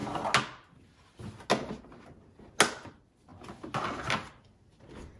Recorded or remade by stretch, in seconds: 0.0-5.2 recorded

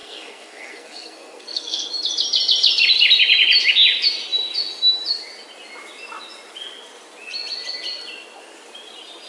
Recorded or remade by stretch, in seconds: 0.0-1.9 remade; 1.9-9.3 recorded

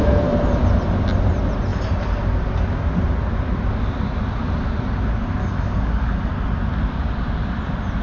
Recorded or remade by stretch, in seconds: 0.0-5.4 recorded; 5.4-6.3 remade; 6.3-8.0 recorded

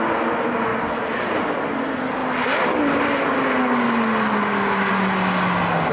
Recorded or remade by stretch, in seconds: 0.0-5.9 recorded

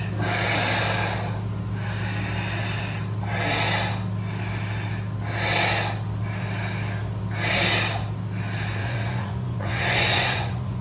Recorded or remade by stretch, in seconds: 0.0-8.8 recorded; 8.8-10.8 remade

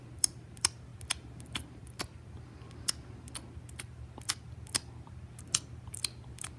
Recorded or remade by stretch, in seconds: 0.0-6.6 recorded

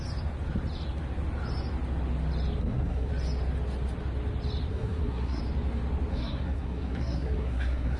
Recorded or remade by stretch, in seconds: 0.0-2.6 recorded; 2.6-3.1 remade; 3.1-4.7 recorded; 4.7-5.4 remade; 5.4-6.1 recorded; 6.1-8.0 remade